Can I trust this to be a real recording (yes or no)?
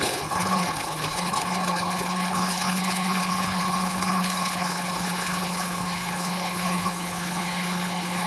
no